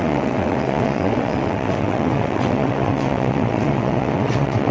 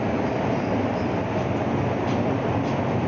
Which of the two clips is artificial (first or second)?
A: first